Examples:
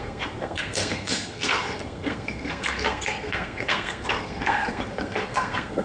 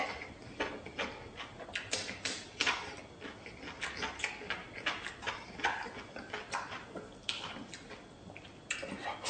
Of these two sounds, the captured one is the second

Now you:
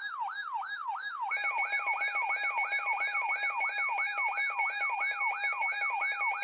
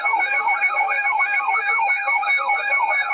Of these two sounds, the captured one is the first